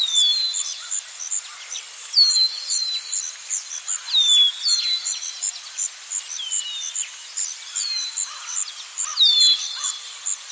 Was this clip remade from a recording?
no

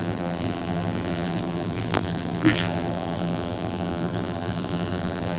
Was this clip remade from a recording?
yes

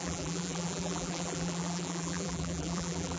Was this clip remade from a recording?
yes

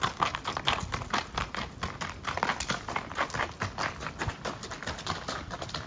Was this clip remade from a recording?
no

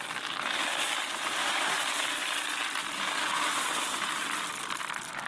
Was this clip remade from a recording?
no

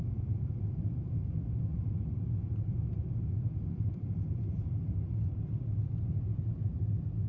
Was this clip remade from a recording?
yes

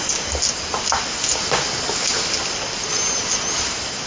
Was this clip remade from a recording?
no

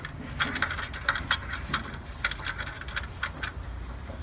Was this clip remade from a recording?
no